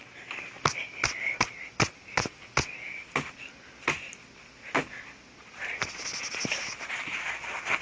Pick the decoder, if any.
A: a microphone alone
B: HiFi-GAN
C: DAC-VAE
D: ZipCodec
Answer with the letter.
A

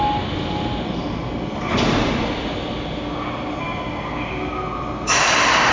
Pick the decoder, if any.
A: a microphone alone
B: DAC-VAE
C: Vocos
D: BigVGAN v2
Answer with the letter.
A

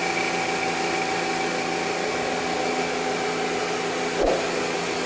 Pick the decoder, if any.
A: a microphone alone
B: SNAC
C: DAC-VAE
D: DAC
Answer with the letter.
A